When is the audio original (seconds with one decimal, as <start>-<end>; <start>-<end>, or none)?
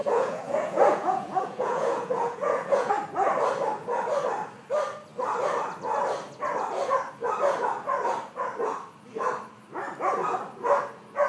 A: 2.9-11.3